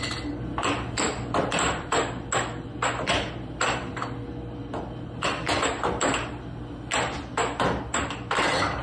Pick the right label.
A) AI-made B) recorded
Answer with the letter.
B